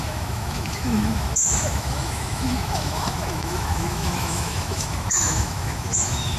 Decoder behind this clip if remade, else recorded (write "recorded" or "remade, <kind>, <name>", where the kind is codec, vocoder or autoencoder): remade, autoencoder, DAC-VAE